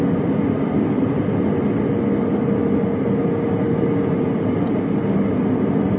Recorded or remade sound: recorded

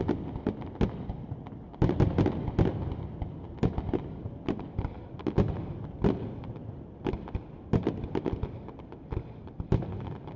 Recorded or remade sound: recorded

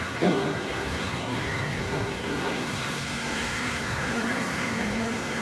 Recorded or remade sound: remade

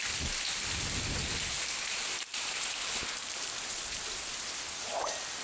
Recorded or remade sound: remade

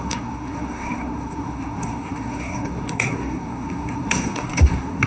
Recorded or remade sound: remade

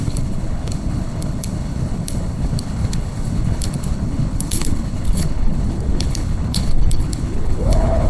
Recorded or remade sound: remade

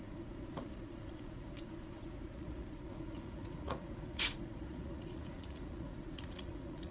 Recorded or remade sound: remade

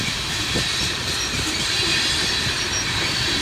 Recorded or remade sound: recorded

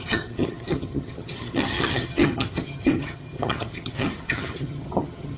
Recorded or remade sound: remade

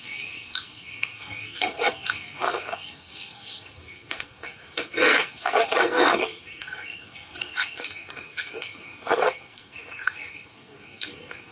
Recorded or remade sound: remade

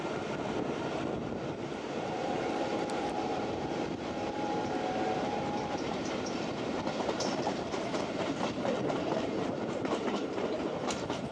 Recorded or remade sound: remade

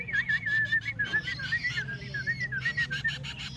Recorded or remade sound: recorded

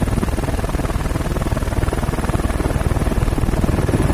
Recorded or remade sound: recorded